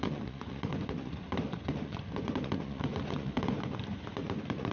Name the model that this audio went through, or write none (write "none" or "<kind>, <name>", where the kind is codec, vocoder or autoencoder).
vocoder, Vocos